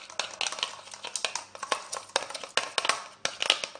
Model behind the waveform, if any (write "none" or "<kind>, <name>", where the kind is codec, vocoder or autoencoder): none